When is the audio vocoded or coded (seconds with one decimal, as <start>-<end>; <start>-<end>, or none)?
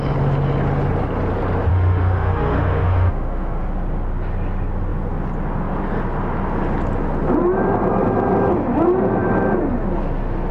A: 1.7-3.6